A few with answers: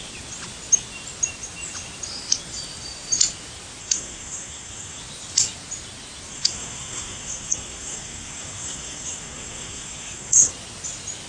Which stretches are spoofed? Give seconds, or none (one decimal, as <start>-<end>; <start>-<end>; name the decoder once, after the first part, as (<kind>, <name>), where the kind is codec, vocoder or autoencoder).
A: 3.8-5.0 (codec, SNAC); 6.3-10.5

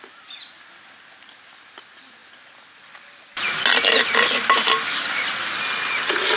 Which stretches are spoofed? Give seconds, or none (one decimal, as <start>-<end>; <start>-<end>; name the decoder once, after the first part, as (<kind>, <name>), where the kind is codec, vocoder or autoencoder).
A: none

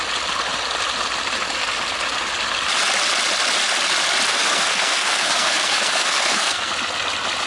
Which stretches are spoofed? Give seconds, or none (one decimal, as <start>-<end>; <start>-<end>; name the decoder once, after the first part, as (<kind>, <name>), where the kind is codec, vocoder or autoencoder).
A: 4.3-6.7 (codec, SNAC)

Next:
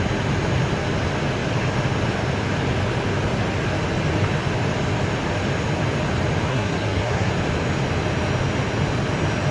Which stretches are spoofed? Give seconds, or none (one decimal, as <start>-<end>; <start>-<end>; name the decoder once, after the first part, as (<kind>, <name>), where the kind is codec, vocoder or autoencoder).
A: 6.5-7.3 (codec, SNAC)